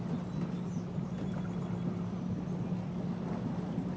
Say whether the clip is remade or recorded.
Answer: recorded